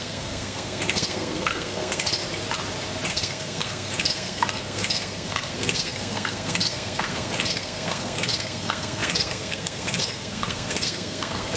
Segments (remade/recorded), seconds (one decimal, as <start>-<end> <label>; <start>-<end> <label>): 0.0-2.2 remade; 2.2-3.1 recorded; 3.1-11.6 remade